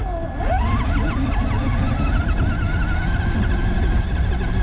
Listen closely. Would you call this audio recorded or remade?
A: recorded